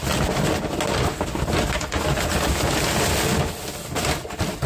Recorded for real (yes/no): yes